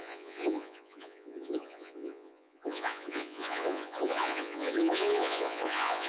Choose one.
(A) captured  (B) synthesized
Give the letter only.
B